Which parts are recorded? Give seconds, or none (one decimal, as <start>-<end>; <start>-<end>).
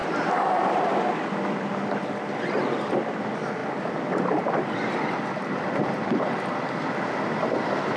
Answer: 0.0-8.0